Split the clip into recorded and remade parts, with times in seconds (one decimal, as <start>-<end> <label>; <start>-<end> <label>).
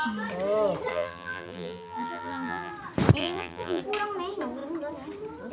0.0-0.9 recorded; 0.9-2.7 remade; 2.7-3.2 recorded; 3.2-3.8 remade; 3.8-5.5 recorded